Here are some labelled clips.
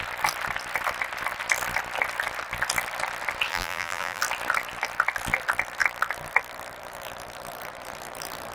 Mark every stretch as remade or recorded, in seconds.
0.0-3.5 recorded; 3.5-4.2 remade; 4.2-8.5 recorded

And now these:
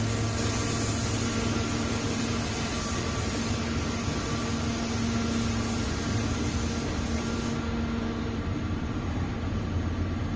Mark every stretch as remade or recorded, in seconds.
0.0-8.5 recorded; 8.5-9.7 remade; 9.7-10.4 recorded

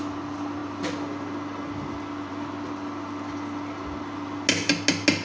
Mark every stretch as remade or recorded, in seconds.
0.0-5.2 recorded